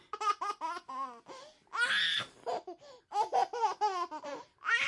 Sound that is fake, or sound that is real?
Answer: real